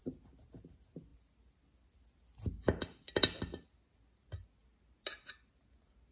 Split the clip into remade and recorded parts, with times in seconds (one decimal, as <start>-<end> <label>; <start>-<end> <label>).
0.0-6.1 recorded